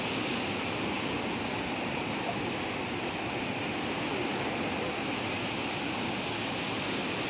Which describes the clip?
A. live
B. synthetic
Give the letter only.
A